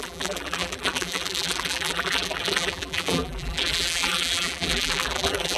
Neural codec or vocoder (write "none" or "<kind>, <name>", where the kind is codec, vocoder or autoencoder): vocoder, BigVGAN v2